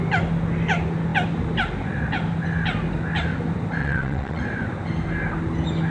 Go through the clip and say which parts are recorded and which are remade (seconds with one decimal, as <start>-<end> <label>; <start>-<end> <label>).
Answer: 0.0-3.8 recorded; 3.8-4.4 remade; 4.4-5.9 recorded